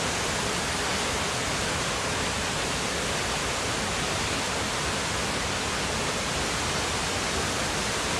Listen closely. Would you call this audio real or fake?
real